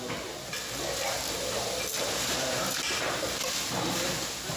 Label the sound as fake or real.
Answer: real